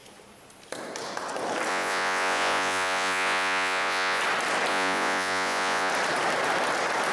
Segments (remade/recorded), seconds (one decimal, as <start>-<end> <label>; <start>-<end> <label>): 0.0-1.7 recorded; 1.7-4.2 remade; 4.2-4.7 recorded; 4.7-5.9 remade; 5.9-7.1 recorded